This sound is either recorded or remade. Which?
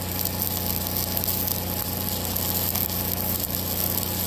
recorded